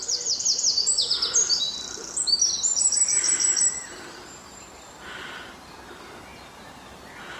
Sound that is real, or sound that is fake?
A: real